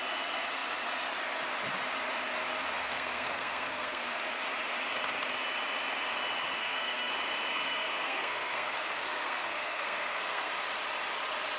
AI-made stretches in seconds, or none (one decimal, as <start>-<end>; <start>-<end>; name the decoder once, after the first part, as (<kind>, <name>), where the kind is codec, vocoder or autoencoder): 2.8-4.2 (codec, SNAC); 6.6-7.1; 7.5-10.5

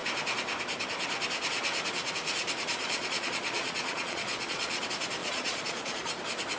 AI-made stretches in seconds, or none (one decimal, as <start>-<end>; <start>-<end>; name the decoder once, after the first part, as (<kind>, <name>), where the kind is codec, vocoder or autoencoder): 2.7-4.8 (vocoder, Vocos); 5.2-6.1

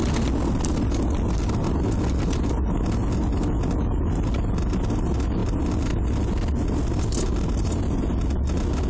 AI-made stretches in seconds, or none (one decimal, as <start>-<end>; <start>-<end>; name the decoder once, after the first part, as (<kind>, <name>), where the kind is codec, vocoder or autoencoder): none

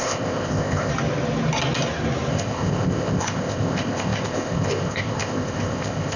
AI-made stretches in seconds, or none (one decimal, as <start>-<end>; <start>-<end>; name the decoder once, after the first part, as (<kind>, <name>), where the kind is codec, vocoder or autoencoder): 0.0-0.9 (codec, ZipCodec); 2.3-6.2

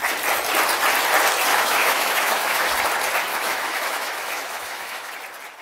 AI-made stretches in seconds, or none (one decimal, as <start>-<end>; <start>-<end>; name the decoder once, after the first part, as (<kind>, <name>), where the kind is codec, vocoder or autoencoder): 1.5-2.7 (autoencoder, DAC-VAE); 3.3-5.1

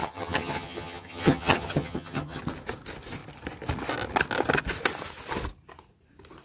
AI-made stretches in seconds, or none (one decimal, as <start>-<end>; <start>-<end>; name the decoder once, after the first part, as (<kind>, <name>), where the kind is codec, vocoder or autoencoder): 0.0-2.4 (vocoder, HiFi-GAN)

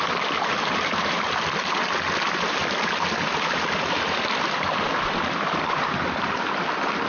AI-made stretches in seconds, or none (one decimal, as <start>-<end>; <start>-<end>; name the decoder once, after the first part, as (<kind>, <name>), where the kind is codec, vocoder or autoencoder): none